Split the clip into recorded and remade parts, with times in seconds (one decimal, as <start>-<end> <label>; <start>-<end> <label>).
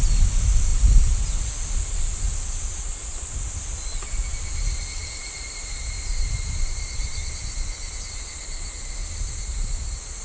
0.0-5.0 recorded; 5.0-7.1 remade; 7.1-9.0 recorded; 9.0-9.7 remade; 9.7-10.2 recorded